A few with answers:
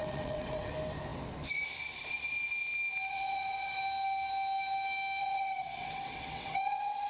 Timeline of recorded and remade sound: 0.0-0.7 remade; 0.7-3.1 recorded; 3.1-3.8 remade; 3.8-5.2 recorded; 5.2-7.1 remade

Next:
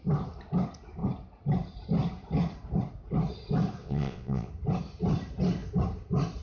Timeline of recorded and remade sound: 0.0-3.8 recorded; 3.8-4.5 remade; 4.5-6.4 recorded

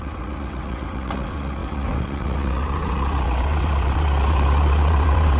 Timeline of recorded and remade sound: 0.0-5.4 remade

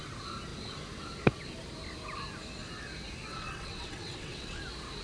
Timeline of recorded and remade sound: 0.0-3.3 recorded; 3.3-4.6 remade; 4.6-5.0 recorded

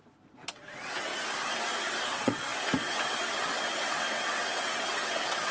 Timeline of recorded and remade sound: 0.0-0.5 recorded; 0.5-1.1 remade; 1.1-1.8 recorded; 1.8-5.5 remade

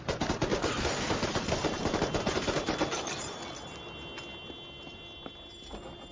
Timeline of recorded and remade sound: 0.0-6.1 recorded

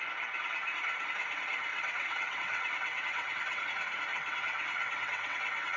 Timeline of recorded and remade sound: 0.0-1.7 recorded; 1.7-3.6 remade; 3.6-4.1 recorded; 4.1-5.8 remade

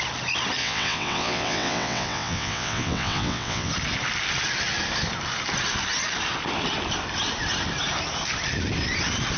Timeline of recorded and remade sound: 0.0-0.6 recorded; 0.6-3.7 remade; 3.7-9.4 recorded